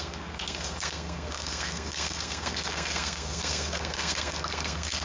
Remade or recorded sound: remade